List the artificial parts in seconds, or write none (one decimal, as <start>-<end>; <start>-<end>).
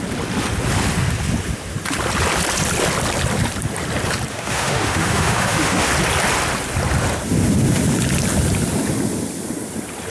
4.3-5.9